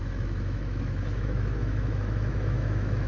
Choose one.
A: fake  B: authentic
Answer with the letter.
A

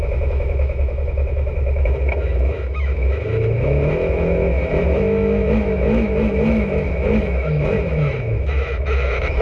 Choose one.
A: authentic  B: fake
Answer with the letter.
B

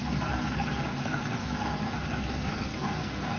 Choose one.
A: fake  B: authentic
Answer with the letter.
A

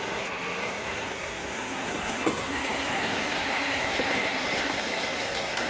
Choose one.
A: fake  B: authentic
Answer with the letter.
A